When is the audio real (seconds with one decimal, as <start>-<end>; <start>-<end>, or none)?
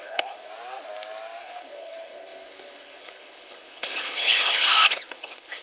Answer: 0.5-1.4